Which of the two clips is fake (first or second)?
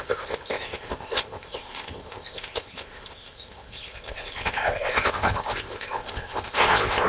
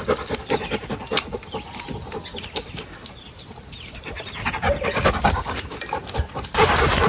first